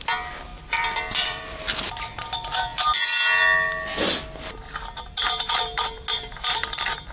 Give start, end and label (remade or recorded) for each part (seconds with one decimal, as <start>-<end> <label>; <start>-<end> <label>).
0.0-0.5 recorded; 0.5-1.6 remade; 1.6-6.1 recorded; 6.1-7.1 remade